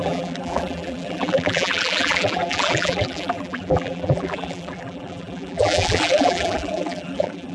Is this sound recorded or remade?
remade